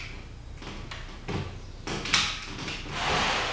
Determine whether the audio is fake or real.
real